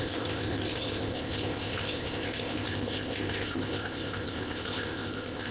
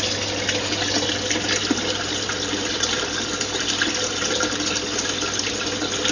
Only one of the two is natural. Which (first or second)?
second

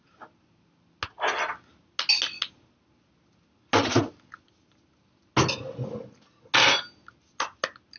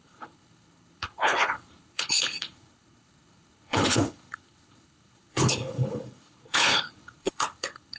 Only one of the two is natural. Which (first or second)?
first